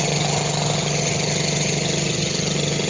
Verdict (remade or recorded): remade